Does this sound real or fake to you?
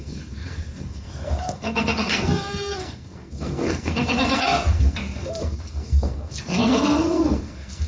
fake